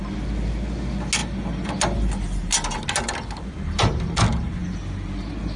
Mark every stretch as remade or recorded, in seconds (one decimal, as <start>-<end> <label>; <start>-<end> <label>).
0.0-5.6 recorded